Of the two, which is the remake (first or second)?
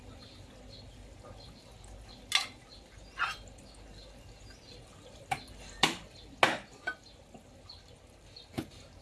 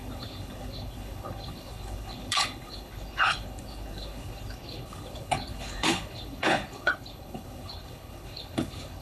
second